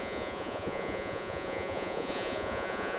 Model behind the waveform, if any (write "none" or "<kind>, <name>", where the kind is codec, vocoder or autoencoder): vocoder, Vocos